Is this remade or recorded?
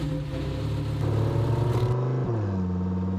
recorded